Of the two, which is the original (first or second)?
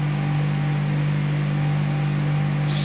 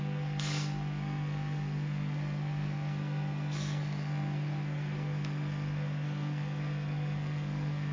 first